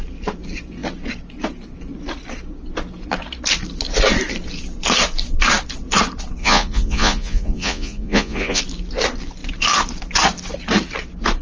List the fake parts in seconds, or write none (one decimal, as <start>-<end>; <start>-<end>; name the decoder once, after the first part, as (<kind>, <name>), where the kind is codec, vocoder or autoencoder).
6.4-8.6 (vocoder, Vocos)